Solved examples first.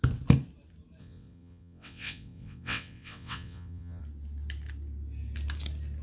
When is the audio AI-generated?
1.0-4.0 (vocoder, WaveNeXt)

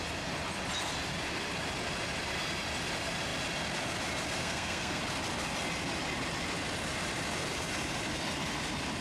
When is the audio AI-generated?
4.4-5.0 (codec, SNAC)

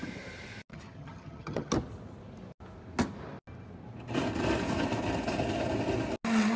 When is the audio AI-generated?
0.7-1.7 (vocoder, HiFi-GAN)

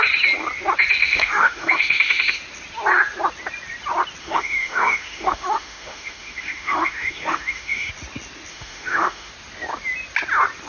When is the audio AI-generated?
1.0-2.4 (autoencoder, DAC-VAE); 4.2-7.9; 8.5-9.3

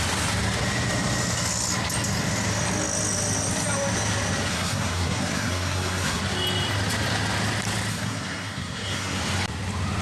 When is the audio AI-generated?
4.5-6.2 (codec, SNAC); 7.9-9.2

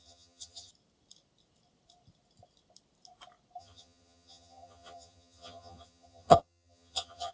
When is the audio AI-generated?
0.0-0.7 (vocoder, HiFi-GAN); 3.6-7.3

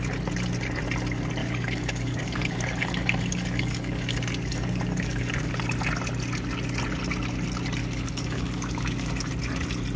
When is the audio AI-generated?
1.4-5.6 (codec, DAC); 7.8-9.3